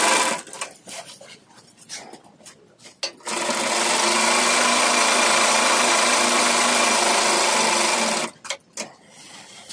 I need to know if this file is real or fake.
real